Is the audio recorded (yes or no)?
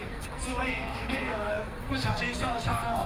no